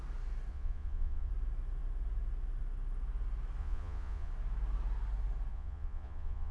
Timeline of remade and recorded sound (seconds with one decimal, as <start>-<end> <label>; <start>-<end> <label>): 0.0-0.5 recorded; 0.5-1.3 remade; 1.3-3.6 recorded; 3.6-4.3 remade; 4.3-5.5 recorded; 5.5-6.5 remade